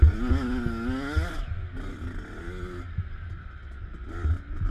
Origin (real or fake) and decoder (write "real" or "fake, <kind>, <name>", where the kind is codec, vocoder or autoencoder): real